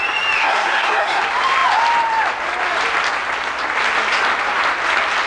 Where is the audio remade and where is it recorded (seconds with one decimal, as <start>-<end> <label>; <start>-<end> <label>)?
0.0-0.4 recorded; 0.4-1.2 remade; 1.2-5.3 recorded